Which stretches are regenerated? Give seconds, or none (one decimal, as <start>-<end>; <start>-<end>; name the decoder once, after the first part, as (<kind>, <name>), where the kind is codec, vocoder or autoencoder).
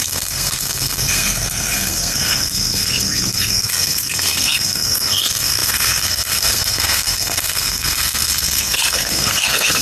0.0-9.8 (codec, SNAC)